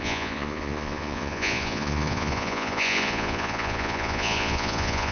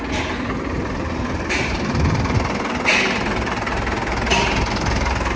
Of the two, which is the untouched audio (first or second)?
second